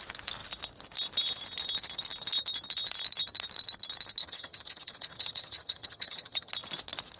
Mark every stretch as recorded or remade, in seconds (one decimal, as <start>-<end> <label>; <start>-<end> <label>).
0.0-4.2 recorded; 4.2-6.5 remade; 6.5-7.2 recorded